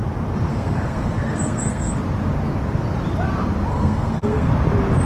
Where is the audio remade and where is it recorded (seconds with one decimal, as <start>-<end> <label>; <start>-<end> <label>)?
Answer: 0.0-0.5 recorded; 0.5-1.9 remade; 1.9-3.7 recorded; 3.7-4.5 remade; 4.5-5.1 recorded